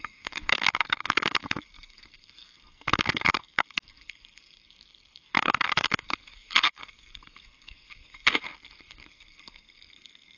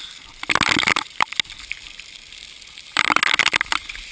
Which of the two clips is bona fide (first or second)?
second